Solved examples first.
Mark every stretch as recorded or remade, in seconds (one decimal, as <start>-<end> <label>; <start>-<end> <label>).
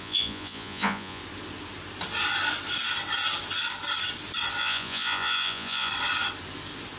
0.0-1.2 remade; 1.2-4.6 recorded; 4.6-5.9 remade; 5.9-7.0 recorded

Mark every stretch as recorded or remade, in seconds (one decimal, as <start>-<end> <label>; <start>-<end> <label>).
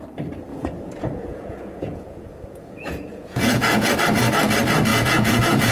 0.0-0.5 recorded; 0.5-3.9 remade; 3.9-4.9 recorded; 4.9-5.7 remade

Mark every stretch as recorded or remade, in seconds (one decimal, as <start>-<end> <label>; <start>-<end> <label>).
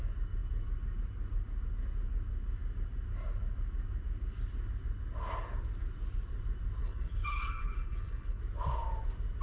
0.0-6.8 recorded; 6.8-8.4 remade; 8.4-9.4 recorded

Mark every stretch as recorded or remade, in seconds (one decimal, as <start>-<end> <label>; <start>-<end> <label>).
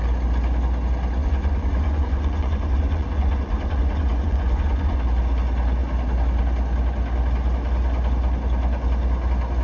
0.0-1.2 recorded; 1.2-5.0 remade; 5.0-9.6 recorded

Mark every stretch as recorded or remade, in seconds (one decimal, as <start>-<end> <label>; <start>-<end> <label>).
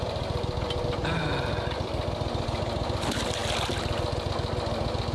0.0-5.1 recorded